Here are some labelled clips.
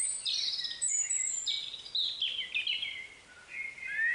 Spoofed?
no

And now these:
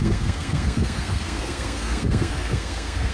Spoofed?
yes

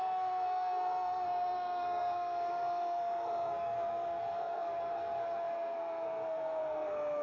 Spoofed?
yes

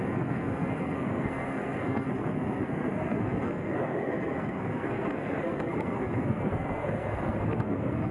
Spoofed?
yes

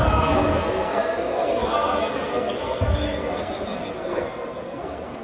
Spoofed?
yes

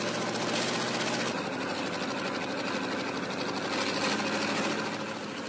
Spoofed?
no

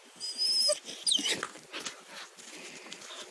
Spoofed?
no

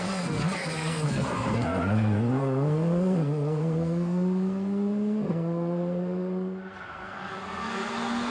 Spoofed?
yes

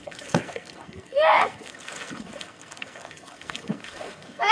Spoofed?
yes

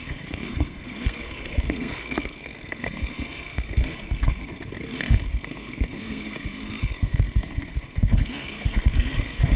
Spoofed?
yes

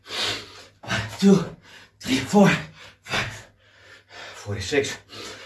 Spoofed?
no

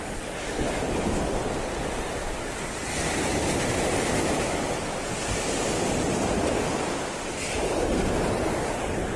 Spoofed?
no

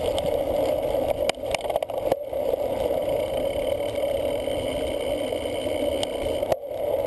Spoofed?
no